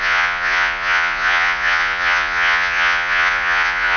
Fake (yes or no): yes